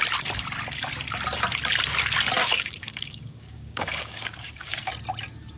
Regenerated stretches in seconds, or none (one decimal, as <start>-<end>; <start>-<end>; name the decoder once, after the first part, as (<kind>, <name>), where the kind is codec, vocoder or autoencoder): 2.4-4.9 (codec, DAC)